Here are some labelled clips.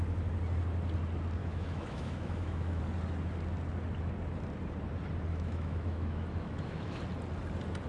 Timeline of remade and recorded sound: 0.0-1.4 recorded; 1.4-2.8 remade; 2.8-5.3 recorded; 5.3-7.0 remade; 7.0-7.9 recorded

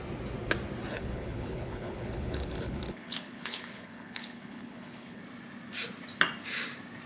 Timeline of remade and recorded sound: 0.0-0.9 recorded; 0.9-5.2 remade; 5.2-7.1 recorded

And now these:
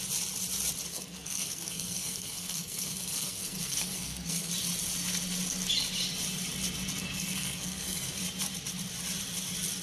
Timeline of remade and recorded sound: 0.0-0.9 recorded; 0.9-4.5 remade; 4.5-7.0 recorded; 7.0-8.2 remade; 8.2-9.8 recorded

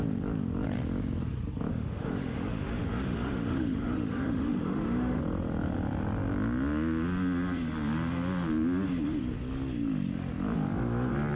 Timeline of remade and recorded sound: 0.0-1.7 recorded; 1.7-5.2 remade; 5.2-11.4 recorded